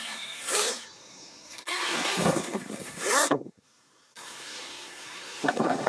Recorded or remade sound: remade